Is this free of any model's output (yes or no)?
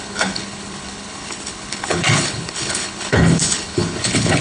no